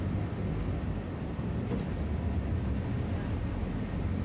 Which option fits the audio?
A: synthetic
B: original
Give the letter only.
B